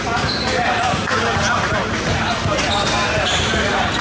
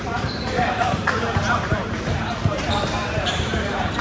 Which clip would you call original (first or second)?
first